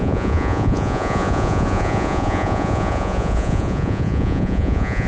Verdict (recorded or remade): remade